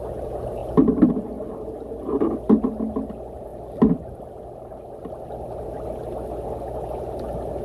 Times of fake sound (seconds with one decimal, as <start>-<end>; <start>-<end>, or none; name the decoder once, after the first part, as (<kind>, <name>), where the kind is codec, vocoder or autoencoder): 0.6-1.1 (vocoder, BigVGAN v2); 3.5-4.2